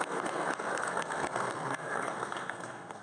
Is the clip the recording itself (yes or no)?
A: no